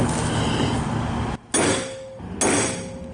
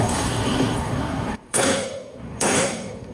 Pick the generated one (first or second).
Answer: second